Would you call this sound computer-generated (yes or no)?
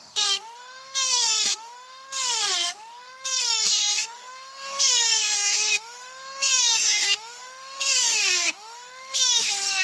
yes